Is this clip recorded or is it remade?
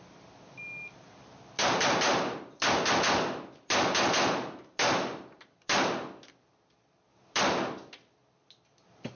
recorded